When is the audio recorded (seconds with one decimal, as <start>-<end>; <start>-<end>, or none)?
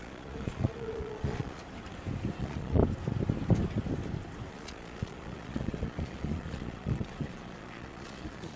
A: 1.6-2.4; 2.8-4.5